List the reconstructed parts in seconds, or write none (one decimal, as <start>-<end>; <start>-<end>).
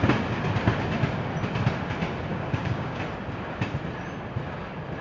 2.3-3.0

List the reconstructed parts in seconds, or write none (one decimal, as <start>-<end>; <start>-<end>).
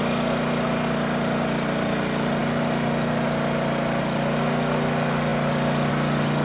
none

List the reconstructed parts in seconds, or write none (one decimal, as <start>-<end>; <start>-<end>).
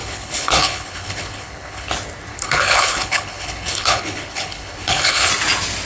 0.0-1.9; 2.3-5.3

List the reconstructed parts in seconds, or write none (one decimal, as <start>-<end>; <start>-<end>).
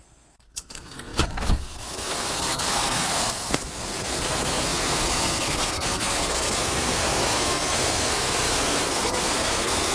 0.0-9.9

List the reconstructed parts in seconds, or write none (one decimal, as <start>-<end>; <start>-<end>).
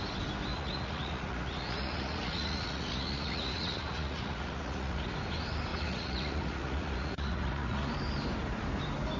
0.5-5.1; 5.7-7.9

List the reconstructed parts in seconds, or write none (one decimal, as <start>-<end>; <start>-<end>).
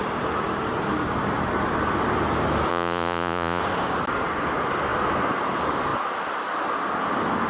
2.7-3.6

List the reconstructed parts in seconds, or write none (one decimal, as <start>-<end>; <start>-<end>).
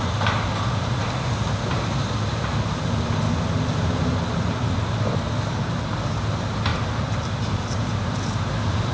none